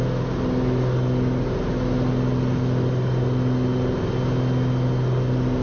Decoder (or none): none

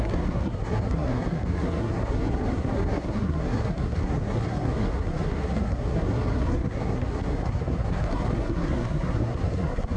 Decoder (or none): codec, SNAC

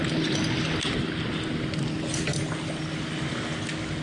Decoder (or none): none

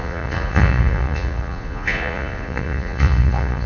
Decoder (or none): vocoder, Vocos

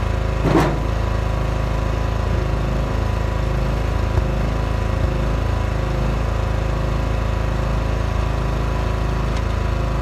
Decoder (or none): none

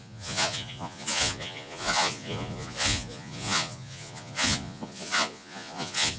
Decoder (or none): vocoder, Vocos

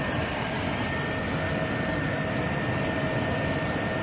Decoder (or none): none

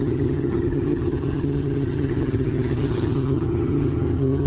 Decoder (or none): vocoder, HiFi-GAN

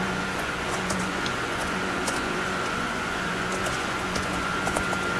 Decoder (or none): vocoder, Vocos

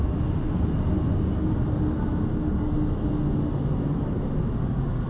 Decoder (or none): none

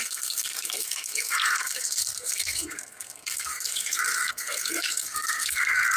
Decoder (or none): codec, SNAC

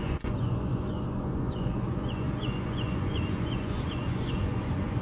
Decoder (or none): vocoder, Vocos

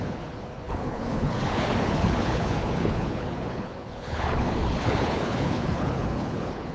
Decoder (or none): codec, HILCodec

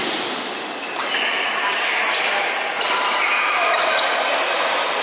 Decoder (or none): none